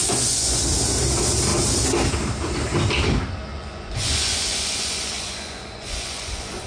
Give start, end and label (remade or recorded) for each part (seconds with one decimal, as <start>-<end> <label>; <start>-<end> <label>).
0.0-0.6 remade; 0.6-3.5 recorded; 3.5-6.7 remade